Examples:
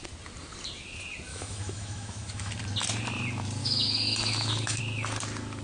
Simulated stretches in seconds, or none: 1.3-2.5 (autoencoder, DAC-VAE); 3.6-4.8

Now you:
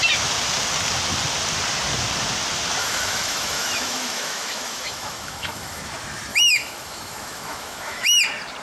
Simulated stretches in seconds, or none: 2.8-5.8 (autoencoder, DAC-VAE); 6.3-8.2

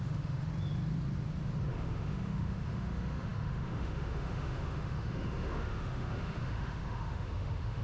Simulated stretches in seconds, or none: 0.0-0.5 (autoencoder, DAC-VAE); 1.7-7.8

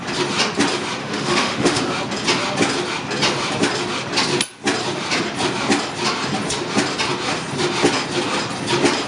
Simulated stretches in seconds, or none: 1.0-1.8 (autoencoder, DAC-VAE)

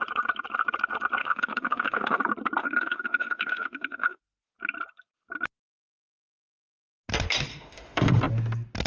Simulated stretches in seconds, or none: 1.2-2.2 (autoencoder, DAC-VAE); 2.6-4.5; 7.5-8.2

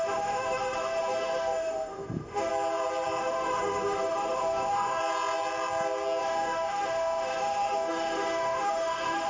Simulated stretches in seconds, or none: 0.0-2.5 (autoencoder, DAC-VAE); 3.2-5.0; 6.2-9.3

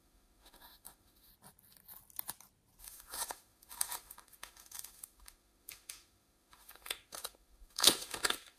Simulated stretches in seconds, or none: 0.0-1.3 (autoencoder, DAC-VAE); 2.8-8.6